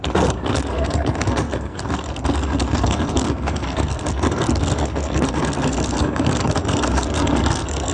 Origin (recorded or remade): remade